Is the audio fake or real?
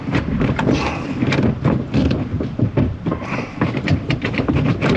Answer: fake